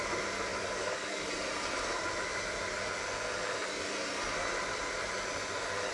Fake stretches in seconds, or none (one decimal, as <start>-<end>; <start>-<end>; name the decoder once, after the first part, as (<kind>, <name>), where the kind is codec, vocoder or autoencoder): 0.5-1.3 (codec, DAC)